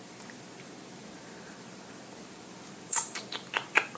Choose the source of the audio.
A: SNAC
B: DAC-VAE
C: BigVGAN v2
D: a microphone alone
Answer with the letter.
C